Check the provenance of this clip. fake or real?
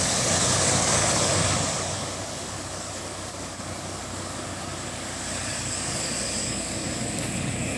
fake